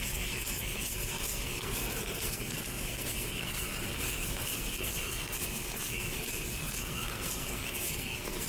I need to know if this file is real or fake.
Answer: fake